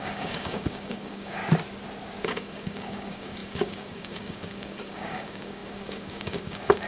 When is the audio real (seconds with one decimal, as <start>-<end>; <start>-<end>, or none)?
1.4-2.2